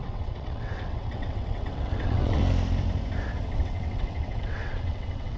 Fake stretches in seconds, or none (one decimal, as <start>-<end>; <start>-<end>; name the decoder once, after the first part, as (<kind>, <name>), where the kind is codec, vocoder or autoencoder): 0.0-2.4 (vocoder, WaveNeXt); 3.5-5.4